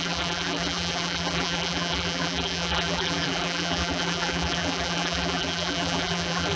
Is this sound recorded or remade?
remade